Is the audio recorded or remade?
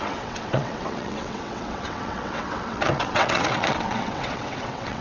remade